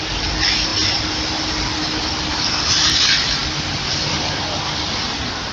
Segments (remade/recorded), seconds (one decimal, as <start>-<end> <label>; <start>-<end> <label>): 0.0-5.5 recorded